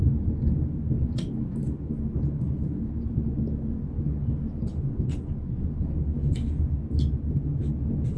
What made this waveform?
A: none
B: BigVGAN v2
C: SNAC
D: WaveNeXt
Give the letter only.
A